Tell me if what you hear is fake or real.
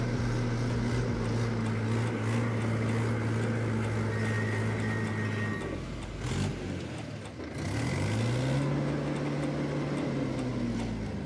real